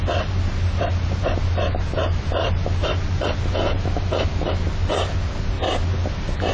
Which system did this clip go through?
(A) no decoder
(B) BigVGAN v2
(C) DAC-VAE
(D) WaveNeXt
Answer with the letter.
A